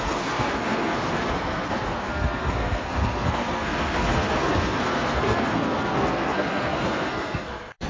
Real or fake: fake